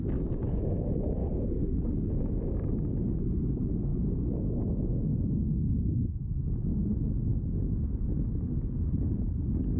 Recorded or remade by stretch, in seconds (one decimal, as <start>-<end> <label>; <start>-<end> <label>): 0.0-9.8 recorded